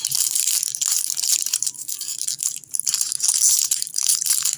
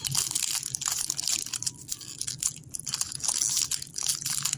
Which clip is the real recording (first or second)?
second